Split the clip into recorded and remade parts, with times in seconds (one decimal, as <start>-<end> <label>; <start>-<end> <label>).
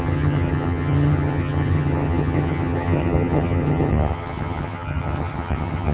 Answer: 0.0-5.9 remade